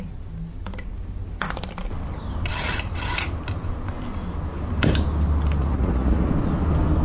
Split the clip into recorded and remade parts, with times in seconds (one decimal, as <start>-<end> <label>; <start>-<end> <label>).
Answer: 0.0-5.6 recorded; 5.6-6.3 remade; 6.3-7.0 recorded